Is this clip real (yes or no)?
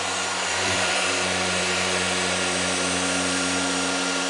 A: no